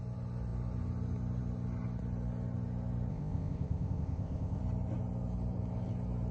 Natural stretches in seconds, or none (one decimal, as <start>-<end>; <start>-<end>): 0.0-3.1; 4.6-6.3